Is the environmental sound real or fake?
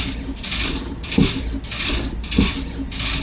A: real